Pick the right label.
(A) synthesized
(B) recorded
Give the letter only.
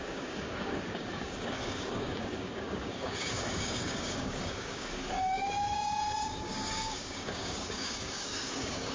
A